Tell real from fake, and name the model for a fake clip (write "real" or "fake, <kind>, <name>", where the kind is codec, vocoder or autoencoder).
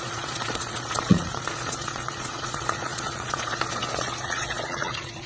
fake, vocoder, Vocos